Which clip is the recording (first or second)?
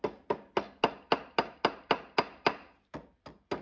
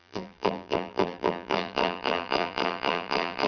first